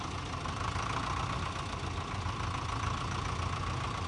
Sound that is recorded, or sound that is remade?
recorded